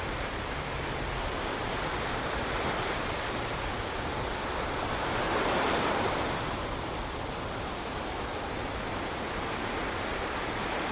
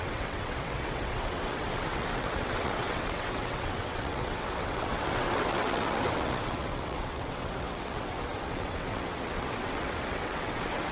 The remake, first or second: second